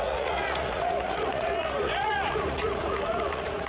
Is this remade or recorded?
remade